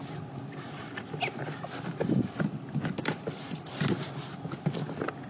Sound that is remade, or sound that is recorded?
recorded